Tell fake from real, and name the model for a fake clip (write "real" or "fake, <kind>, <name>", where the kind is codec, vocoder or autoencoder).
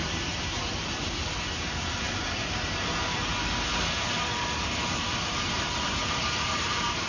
fake, vocoder, BigVGAN v2